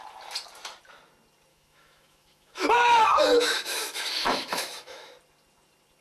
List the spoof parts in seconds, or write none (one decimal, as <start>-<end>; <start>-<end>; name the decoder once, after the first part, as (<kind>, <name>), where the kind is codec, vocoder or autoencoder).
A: 1.5-5.1 (autoencoder, DAC-VAE)